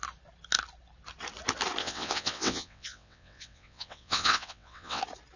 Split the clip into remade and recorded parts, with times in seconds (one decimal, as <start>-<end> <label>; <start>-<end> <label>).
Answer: 0.0-1.8 recorded; 1.8-5.0 remade; 5.0-5.4 recorded